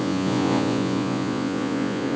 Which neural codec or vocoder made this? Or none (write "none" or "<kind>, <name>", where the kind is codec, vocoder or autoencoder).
vocoder, Vocos